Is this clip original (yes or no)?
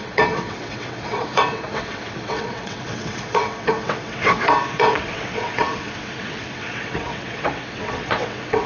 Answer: no